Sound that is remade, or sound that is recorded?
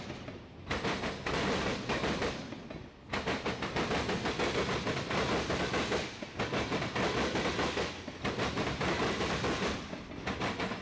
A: recorded